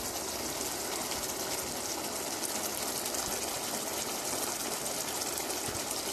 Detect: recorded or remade recorded